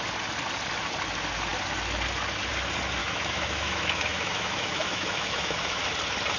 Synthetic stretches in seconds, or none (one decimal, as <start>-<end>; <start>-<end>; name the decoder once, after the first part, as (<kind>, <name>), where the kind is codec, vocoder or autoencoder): 3.0-5.8 (autoencoder, DAC-VAE)